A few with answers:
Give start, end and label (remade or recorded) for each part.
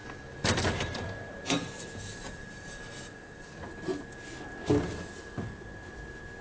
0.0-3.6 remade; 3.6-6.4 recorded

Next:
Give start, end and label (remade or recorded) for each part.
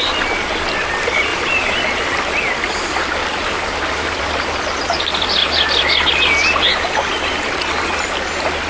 0.0-1.3 recorded; 1.3-2.0 remade; 2.0-3.2 recorded; 3.2-4.2 remade; 4.2-8.7 recorded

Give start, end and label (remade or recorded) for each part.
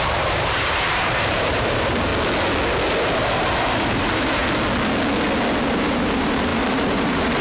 0.0-2.1 remade; 2.1-3.2 recorded; 3.2-4.4 remade; 4.4-5.6 recorded; 5.6-7.4 remade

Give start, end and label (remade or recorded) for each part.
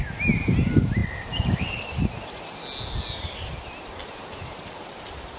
0.0-5.4 recorded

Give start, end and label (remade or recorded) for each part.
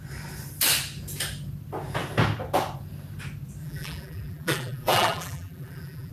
0.0-3.6 recorded; 3.6-6.1 remade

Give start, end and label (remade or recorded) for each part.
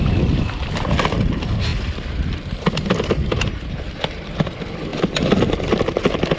0.0-4.9 remade; 4.9-5.7 recorded; 5.7-6.4 remade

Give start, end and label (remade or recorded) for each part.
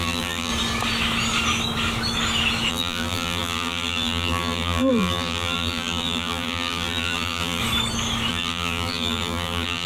0.0-0.5 remade; 0.5-2.7 recorded; 2.7-7.6 remade; 7.6-8.3 recorded; 8.3-9.9 remade